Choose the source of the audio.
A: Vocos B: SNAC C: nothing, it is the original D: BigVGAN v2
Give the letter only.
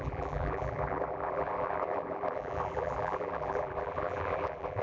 D